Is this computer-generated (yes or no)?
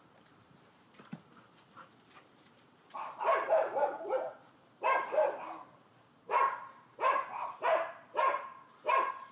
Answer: yes